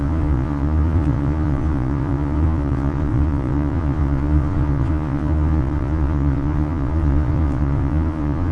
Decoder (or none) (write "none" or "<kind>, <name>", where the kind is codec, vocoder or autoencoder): vocoder, Vocos